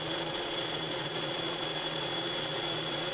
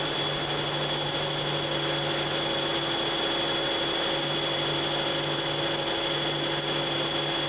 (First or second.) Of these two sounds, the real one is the second